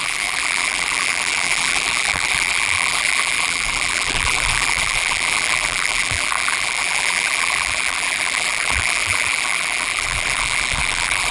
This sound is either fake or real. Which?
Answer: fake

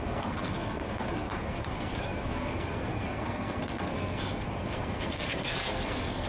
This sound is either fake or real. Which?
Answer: fake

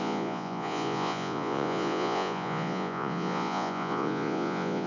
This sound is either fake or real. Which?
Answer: fake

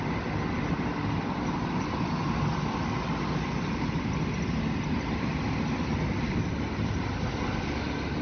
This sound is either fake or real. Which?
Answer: real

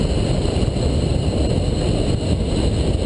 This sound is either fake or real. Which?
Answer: real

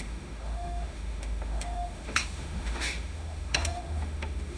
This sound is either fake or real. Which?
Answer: fake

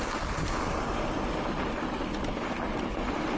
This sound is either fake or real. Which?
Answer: real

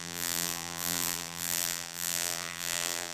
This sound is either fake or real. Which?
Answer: fake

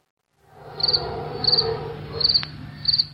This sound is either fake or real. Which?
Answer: real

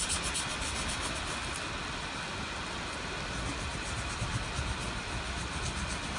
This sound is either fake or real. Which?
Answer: real